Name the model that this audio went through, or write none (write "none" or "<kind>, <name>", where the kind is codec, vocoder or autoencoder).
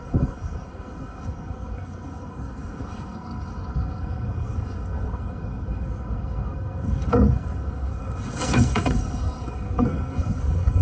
codec, SNAC